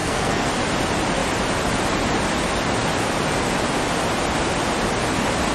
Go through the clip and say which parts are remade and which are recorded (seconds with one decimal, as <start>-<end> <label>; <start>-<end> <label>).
0.0-0.5 remade; 0.5-5.5 recorded